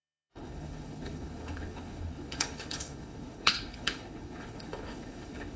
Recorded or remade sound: remade